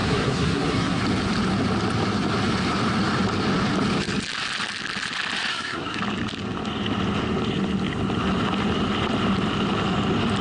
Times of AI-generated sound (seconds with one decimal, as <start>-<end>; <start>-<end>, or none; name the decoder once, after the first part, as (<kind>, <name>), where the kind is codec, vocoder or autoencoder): 0.0-1.0 (codec, SNAC); 5.5-6.0